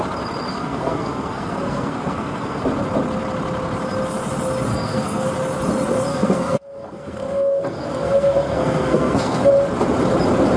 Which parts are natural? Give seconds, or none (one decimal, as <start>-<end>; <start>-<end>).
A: 0.0-0.5; 2.6-4.7; 5.3-6.1; 9.5-10.6